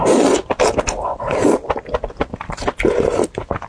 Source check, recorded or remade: recorded